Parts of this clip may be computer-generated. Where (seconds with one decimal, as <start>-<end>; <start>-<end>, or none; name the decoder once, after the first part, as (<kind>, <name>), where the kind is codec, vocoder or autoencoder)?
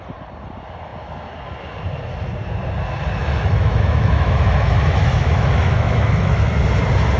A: 3.2-6.5 (autoencoder, DAC-VAE)